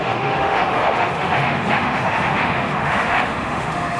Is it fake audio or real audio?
fake